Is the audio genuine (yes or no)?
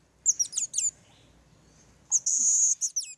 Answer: yes